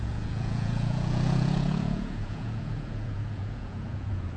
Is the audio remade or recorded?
remade